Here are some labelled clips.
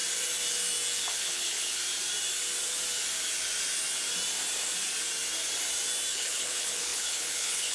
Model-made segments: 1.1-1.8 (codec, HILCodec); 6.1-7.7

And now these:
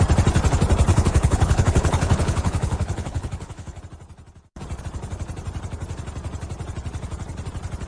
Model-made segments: 0.9-3.8 (codec, HILCodec)

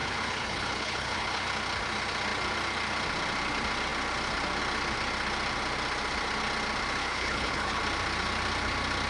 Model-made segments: 0.0-1.5 (codec, HILCodec); 7.0-7.8